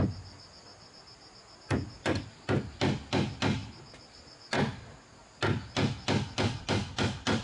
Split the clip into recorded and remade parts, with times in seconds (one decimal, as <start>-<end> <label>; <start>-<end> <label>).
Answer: 0.0-7.4 recorded

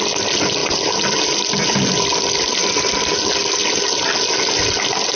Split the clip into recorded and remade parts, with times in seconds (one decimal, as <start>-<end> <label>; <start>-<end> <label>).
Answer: 0.0-5.2 recorded

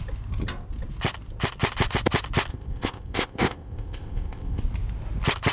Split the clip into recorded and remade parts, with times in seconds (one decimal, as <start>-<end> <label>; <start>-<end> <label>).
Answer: 0.0-2.5 recorded; 2.5-4.6 remade; 4.6-5.5 recorded